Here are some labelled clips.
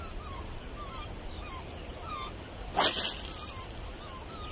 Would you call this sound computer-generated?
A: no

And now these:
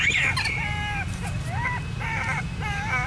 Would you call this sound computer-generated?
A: no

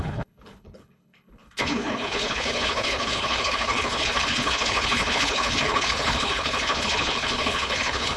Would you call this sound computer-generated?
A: yes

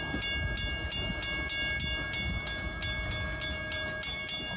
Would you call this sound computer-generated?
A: no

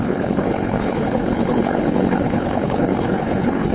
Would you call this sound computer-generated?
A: yes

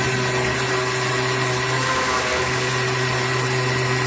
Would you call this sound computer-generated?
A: no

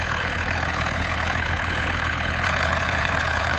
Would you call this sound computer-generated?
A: yes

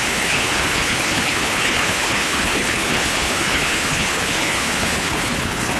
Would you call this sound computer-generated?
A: yes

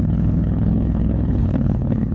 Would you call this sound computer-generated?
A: yes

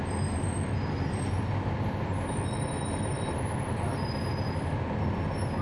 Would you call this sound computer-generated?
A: no